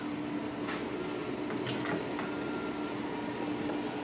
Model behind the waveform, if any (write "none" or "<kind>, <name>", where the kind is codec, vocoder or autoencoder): none